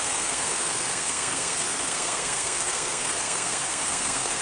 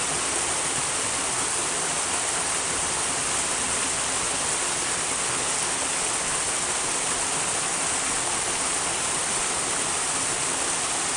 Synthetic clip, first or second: first